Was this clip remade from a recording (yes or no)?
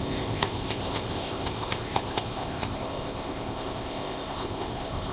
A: yes